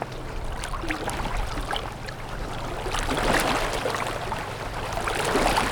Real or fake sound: real